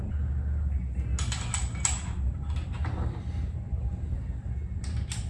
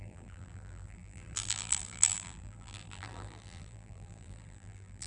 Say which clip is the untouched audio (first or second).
first